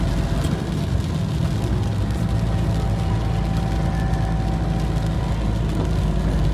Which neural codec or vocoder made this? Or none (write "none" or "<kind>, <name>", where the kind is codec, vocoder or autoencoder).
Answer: none